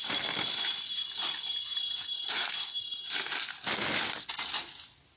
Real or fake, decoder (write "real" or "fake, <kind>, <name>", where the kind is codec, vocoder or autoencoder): real